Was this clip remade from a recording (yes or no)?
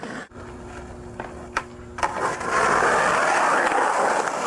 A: no